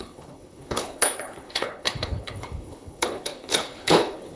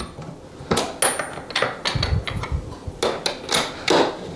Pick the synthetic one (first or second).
first